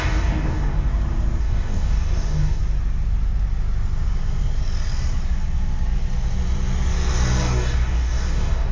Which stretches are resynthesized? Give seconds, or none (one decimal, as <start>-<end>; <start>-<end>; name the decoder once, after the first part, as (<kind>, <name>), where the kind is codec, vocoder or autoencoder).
0.0-0.9 (codec, DAC); 1.4-2.6; 7.4-8.7